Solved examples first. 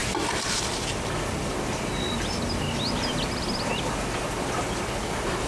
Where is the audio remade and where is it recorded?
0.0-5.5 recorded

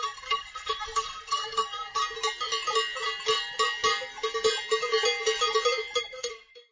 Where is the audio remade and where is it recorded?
0.0-2.0 remade; 2.0-6.0 recorded; 6.0-6.7 remade

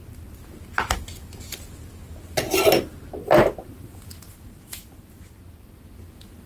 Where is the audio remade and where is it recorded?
0.0-6.5 recorded

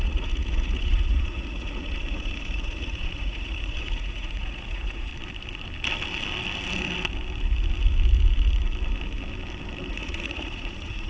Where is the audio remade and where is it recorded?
0.0-5.1 remade; 5.1-9.9 recorded; 9.9-11.1 remade

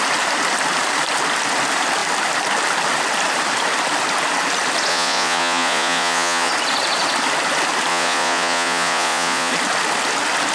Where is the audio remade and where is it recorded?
0.0-4.9 recorded; 4.9-6.5 remade; 6.5-7.9 recorded; 7.9-9.5 remade; 9.5-10.5 recorded

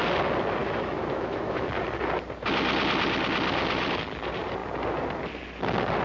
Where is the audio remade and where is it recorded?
0.0-0.6 recorded; 0.6-1.7 remade; 1.7-6.0 recorded

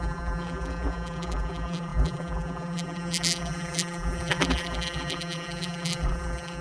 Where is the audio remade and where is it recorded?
0.0-6.6 remade